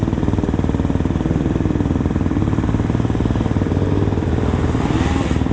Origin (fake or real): real